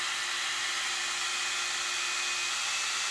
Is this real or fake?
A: real